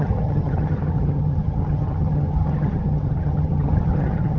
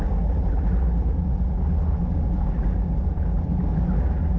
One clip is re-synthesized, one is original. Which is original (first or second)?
second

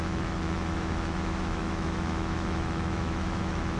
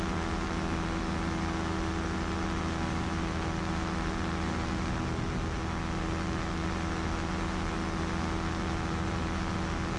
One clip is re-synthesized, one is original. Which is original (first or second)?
second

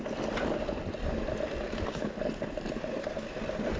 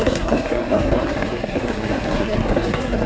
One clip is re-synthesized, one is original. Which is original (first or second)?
first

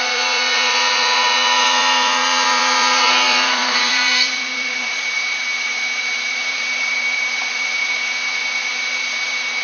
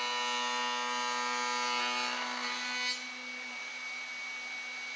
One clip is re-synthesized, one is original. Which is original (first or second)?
second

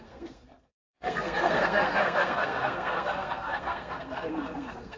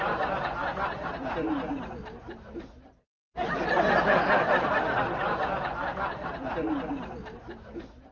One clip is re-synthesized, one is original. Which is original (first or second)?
second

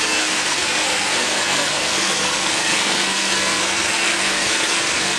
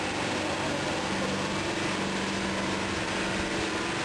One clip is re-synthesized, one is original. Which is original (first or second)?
second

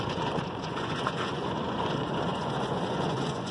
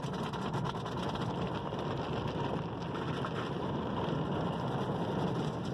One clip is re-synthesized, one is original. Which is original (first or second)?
second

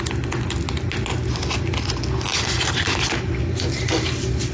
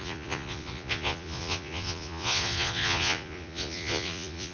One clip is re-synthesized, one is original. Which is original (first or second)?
first